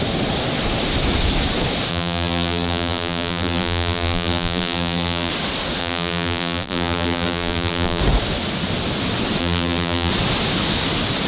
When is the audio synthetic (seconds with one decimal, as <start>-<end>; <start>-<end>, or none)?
1.9-5.3; 5.8-8.0; 9.4-10.1